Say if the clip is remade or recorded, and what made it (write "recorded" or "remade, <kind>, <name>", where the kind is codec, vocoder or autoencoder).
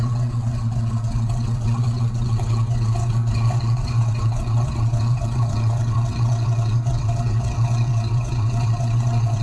remade, vocoder, WaveNeXt